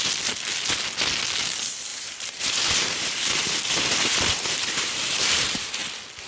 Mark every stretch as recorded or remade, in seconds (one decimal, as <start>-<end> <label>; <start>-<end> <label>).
0.0-1.9 recorded; 1.9-5.7 remade; 5.7-6.3 recorded